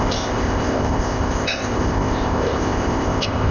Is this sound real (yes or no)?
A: no